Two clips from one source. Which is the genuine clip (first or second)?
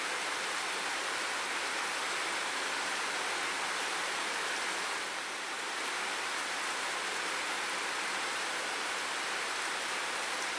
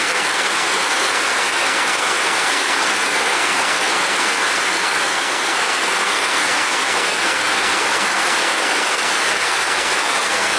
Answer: first